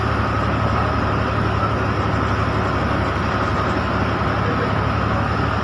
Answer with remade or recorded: recorded